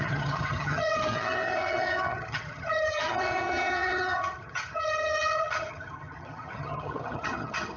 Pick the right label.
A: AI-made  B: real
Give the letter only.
A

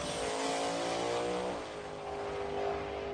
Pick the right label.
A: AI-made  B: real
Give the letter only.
B